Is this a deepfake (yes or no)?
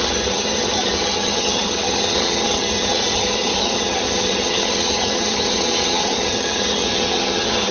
yes